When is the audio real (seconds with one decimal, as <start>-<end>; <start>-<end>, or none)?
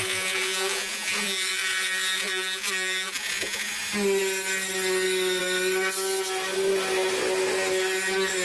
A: 3.7-8.4